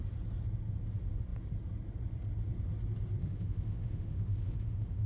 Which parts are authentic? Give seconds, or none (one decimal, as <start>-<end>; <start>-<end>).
0.0-3.2